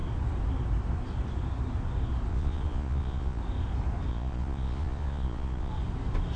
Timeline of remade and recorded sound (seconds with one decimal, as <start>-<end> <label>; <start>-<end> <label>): 0.0-2.3 recorded; 2.3-3.4 remade; 3.4-4.1 recorded; 4.1-5.7 remade; 5.7-6.4 recorded